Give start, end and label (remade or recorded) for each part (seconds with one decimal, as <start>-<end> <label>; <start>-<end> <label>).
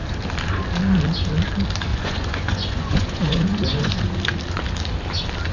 0.0-1.9 recorded; 1.9-4.1 remade; 4.1-5.5 recorded